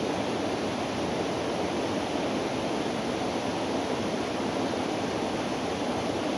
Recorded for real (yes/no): yes